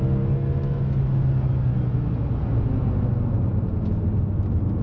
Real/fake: real